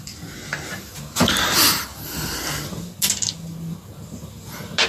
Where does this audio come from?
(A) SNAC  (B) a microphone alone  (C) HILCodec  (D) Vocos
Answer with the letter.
B